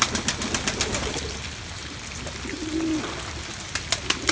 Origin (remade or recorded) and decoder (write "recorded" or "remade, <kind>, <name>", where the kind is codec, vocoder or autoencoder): recorded